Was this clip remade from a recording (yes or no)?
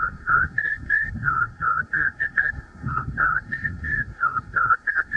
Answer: yes